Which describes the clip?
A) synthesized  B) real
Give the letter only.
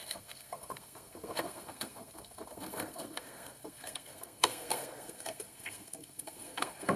A